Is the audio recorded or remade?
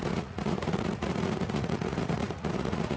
remade